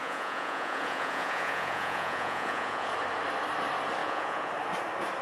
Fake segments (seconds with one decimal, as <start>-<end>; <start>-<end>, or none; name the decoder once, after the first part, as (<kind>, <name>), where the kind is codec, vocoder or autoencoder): 0.0-2.9 (vocoder, Vocos); 4.0-4.5